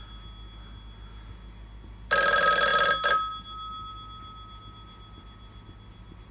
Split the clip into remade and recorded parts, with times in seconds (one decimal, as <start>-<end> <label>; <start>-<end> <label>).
0.0-6.3 recorded